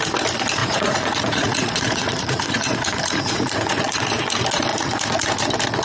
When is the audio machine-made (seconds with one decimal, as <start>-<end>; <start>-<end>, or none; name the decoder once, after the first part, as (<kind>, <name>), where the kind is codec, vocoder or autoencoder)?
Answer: 0.6-4.1 (vocoder, Vocos); 4.7-5.3